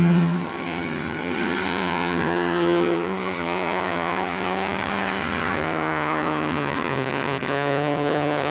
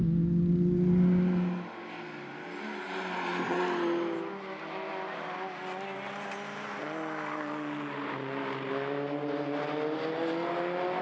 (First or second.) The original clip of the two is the second